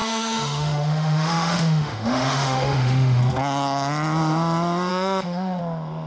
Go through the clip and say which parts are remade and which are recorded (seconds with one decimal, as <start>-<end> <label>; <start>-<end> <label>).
0.0-3.2 remade; 3.2-4.9 recorded; 4.9-5.6 remade; 5.6-6.1 recorded